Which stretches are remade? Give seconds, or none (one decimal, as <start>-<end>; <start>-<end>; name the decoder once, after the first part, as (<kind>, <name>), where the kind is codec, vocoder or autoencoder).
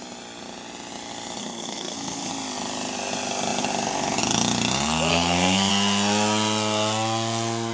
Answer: 1.4-2.3 (codec, SNAC); 5.1-5.7